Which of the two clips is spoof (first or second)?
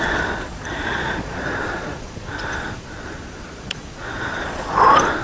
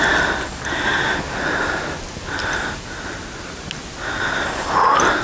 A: first